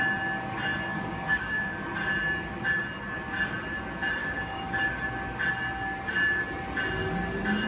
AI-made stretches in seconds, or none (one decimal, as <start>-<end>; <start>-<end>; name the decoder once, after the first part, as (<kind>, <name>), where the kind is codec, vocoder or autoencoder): 0.9-1.8 (codec, DAC); 4.2-4.8